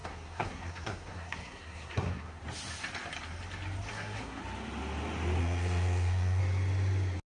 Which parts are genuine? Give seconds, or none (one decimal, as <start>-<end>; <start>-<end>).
2.4-3.9; 4.4-5.4; 6.4-7.3

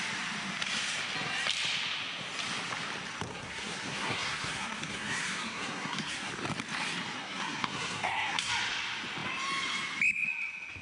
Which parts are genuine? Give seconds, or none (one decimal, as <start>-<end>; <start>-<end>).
0.0-3.3; 6.3-7.2; 8.5-10.8

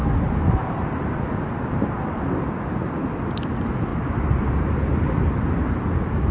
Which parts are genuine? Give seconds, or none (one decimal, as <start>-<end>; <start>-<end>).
0.0-3.9; 4.7-6.3